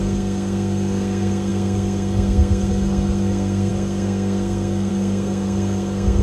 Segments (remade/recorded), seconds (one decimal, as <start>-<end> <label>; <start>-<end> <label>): 0.0-6.2 remade